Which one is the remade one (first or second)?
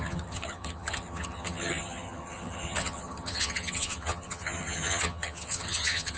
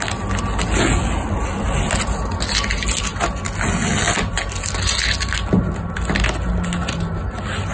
first